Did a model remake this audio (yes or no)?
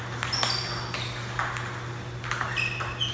no